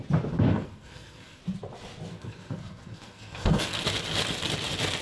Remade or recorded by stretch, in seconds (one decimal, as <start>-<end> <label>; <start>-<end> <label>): 0.0-0.5 recorded; 0.5-1.4 remade; 1.4-2.1 recorded; 2.1-3.8 remade; 3.8-5.0 recorded